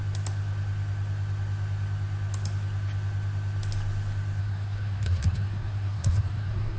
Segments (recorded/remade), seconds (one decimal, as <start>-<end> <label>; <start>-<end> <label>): 0.0-4.4 recorded; 4.4-6.8 remade